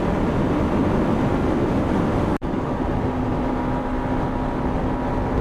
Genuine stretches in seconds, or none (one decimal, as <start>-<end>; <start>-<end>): 0.0-2.3; 2.8-5.4